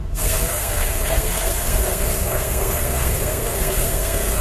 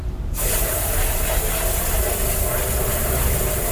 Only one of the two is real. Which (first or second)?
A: second